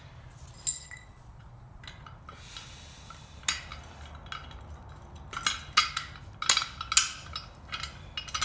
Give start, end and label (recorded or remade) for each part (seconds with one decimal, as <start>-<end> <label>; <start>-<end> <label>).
0.0-0.7 recorded; 0.7-1.8 remade; 1.8-8.4 recorded